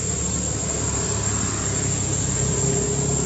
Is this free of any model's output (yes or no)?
yes